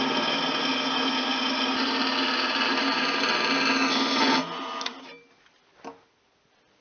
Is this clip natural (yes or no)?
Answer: yes